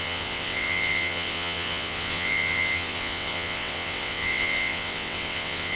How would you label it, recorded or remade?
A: remade